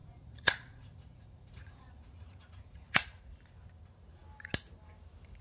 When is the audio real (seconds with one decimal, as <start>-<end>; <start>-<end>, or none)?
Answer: 3.2-5.4